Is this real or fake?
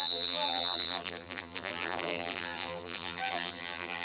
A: fake